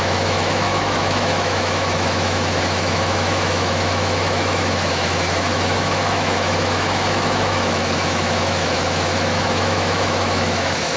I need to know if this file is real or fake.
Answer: fake